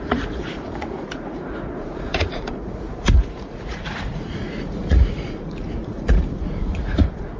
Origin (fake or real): fake